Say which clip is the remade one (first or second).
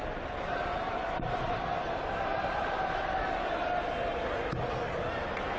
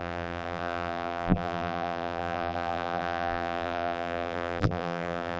second